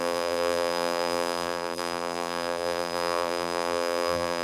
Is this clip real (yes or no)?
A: no